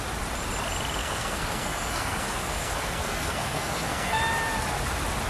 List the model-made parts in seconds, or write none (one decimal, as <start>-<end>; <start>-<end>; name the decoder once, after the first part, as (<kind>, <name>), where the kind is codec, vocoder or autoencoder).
1.0-4.2 (codec, SNAC)